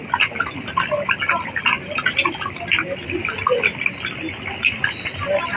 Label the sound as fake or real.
real